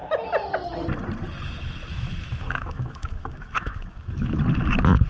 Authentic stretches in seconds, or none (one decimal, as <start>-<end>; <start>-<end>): 0.0-1.9; 4.4-5.1